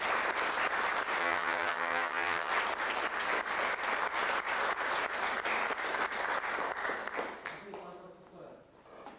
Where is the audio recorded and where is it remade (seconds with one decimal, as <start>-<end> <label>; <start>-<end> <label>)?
0.0-1.2 recorded; 1.2-2.5 remade; 2.5-9.2 recorded